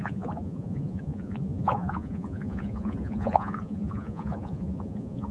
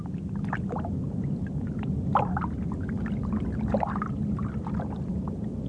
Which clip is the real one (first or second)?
second